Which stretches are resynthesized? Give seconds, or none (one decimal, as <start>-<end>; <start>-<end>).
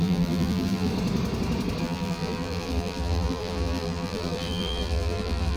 0.0-0.9; 1.8-5.6